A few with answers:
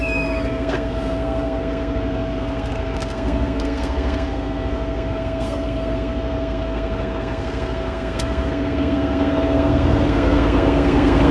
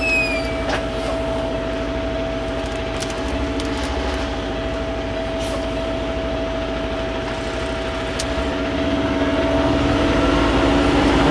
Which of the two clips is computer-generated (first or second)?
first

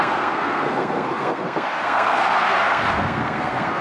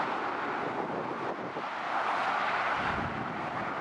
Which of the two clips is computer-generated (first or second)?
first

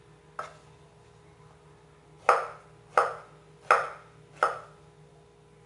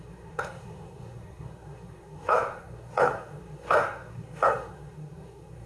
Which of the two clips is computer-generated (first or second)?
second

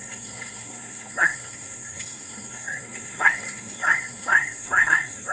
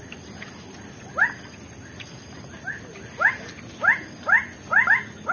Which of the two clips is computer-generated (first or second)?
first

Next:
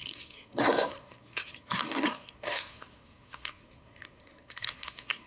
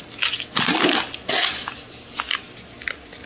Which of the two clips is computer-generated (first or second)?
first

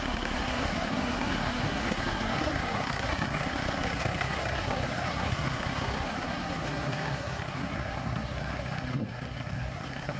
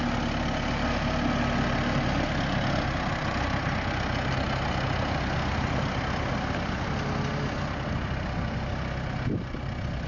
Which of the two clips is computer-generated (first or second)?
first